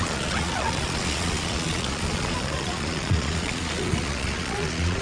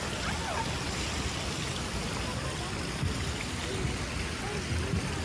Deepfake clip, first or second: first